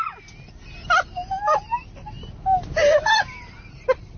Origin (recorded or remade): recorded